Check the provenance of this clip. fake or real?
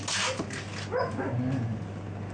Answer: real